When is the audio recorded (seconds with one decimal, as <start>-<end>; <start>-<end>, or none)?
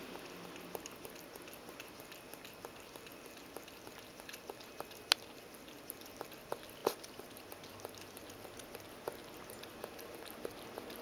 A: 0.0-11.0